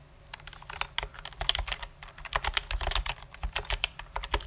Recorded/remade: recorded